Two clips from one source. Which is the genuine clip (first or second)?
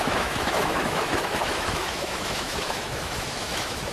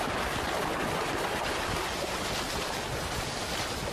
second